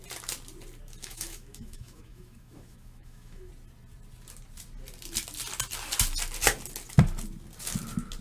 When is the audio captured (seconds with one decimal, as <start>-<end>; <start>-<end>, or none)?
0.0-1.0; 3.5-8.2